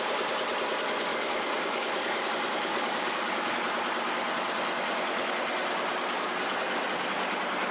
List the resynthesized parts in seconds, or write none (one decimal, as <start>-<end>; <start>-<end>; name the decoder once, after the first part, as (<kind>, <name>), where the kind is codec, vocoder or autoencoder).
1.1-2.3 (codec, DAC); 2.7-3.6; 5.9-6.8